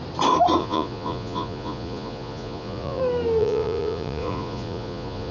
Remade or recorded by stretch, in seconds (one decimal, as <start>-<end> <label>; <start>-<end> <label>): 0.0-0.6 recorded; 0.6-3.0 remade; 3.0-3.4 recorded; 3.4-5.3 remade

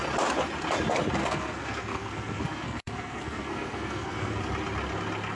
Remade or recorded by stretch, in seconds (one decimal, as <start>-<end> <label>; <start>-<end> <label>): 0.0-1.2 recorded; 1.2-4.4 remade; 4.4-5.4 recorded

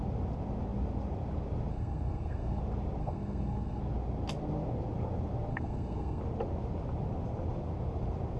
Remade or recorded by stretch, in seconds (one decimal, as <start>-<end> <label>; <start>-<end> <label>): 0.0-1.7 recorded; 1.7-2.6 remade; 2.6-3.0 recorded; 3.0-3.8 remade; 3.8-5.5 recorded; 5.5-6.2 remade; 6.2-8.4 recorded

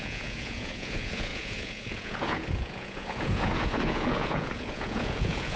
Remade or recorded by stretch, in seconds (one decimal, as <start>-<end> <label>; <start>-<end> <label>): 0.0-5.6 remade

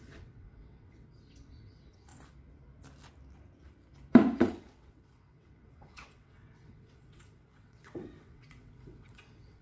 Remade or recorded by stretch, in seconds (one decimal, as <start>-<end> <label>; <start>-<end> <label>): 0.0-2.1 remade; 2.1-4.5 recorded; 4.5-9.6 remade